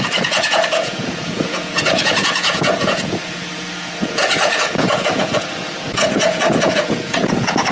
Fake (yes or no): yes